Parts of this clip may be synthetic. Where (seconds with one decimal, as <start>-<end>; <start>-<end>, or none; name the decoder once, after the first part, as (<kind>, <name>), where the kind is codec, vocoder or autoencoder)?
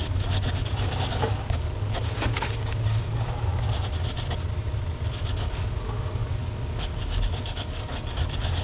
0.0-3.5 (codec, DAC); 5.1-8.6